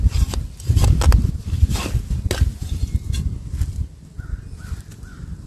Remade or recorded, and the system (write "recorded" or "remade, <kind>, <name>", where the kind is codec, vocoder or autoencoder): recorded